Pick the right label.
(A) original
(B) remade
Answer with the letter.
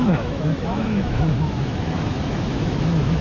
B